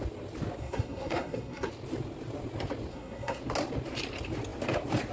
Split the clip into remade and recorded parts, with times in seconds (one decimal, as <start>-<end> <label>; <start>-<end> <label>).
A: 0.0-0.6 recorded; 0.6-1.7 remade; 1.7-2.9 recorded; 2.9-3.4 remade; 3.4-5.1 recorded